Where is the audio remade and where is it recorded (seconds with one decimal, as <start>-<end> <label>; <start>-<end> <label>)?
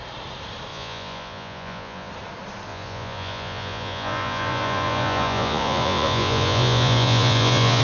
0.0-0.7 recorded; 0.7-2.1 remade; 2.1-2.7 recorded; 2.7-7.8 remade